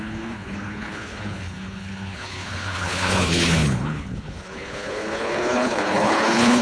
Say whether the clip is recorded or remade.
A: remade